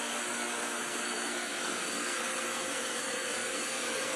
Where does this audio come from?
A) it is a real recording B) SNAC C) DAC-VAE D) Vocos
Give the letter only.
B